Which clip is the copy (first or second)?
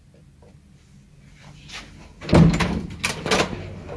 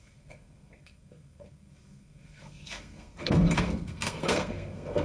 second